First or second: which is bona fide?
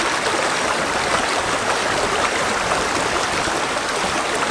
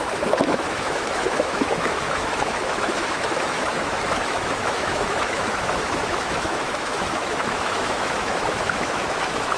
first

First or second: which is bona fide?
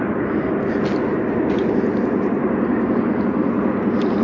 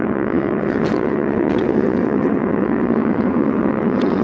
first